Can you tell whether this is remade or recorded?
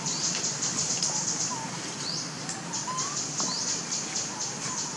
recorded